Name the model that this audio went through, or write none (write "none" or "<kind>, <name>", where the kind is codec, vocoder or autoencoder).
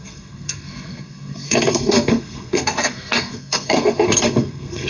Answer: codec, SNAC